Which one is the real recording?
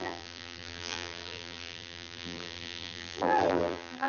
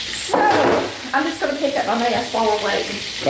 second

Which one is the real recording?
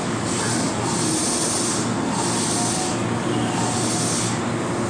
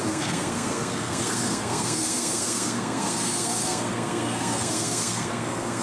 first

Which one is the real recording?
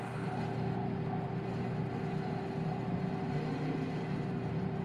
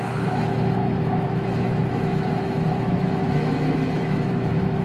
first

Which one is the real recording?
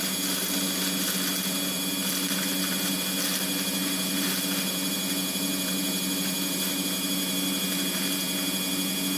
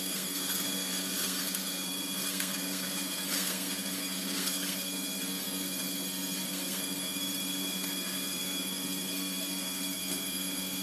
first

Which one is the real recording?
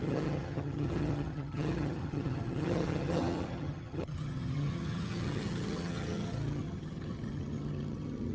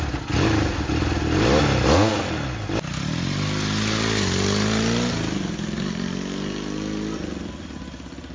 second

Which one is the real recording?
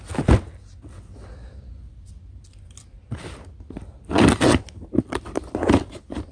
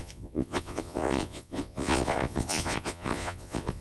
first